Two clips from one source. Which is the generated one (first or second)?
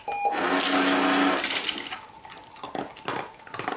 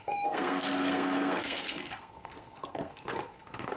second